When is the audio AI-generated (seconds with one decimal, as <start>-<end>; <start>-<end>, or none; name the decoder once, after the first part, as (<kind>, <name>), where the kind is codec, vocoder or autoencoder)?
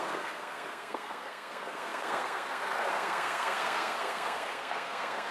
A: 0.0-5.3 (codec, SNAC)